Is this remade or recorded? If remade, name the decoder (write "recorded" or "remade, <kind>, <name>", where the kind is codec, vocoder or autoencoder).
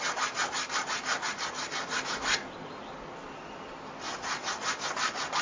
recorded